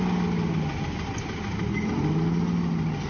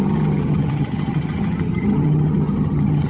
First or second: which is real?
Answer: first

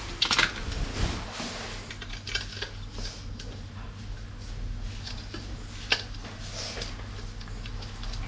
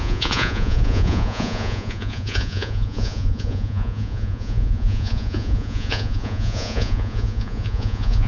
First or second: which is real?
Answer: first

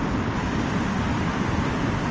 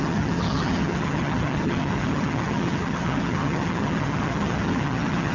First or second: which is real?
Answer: first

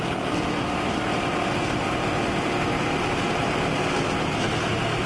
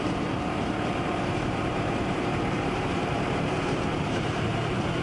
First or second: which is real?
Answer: first